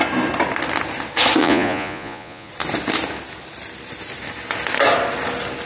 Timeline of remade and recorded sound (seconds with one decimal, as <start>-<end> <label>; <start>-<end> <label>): 0.0-1.4 recorded; 1.4-2.5 remade; 2.5-5.7 recorded